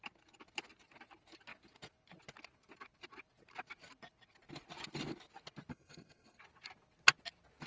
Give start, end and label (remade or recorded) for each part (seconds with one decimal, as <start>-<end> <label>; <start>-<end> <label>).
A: 0.0-5.7 recorded; 5.7-6.4 remade; 6.4-7.7 recorded